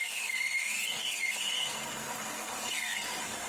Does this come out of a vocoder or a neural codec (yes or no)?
yes